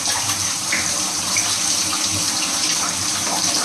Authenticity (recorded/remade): remade